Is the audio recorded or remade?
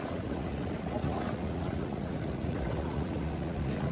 remade